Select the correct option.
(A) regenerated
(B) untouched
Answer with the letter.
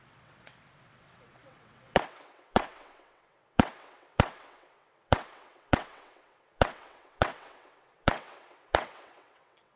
A